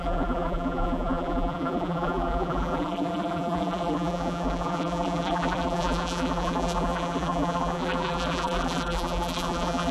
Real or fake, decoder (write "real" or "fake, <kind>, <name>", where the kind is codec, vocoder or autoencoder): fake, vocoder, BigVGAN v2